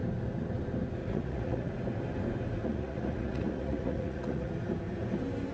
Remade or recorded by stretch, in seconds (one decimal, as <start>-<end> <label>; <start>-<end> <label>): 0.0-1.0 recorded; 1.0-1.7 remade; 1.7-2.6 recorded; 2.6-4.5 remade; 4.5-5.5 recorded